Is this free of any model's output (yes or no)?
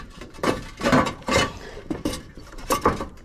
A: no